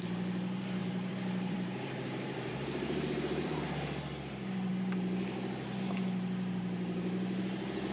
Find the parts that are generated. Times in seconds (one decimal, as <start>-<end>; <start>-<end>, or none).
0.8-3.6